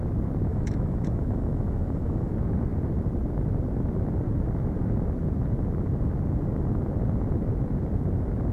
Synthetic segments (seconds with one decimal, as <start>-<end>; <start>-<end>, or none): 0.5-2.3

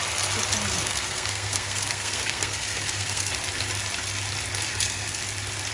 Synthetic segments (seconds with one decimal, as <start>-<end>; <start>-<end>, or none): 0.7-3.3; 4.7-5.2

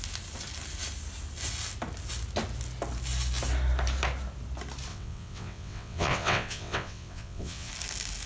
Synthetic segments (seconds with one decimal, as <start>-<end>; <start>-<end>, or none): 4.9-7.7